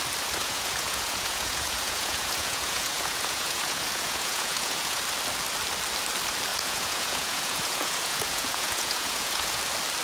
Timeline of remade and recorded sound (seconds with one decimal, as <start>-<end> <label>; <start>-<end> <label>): 0.0-0.4 recorded; 0.4-5.0 remade; 5.0-6.5 recorded; 6.5-9.6 remade; 9.6-10.0 recorded